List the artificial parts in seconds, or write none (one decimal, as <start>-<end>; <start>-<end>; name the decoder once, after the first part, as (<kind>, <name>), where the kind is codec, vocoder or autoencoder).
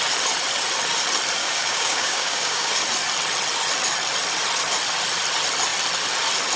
1.4-2.7 (codec, DAC)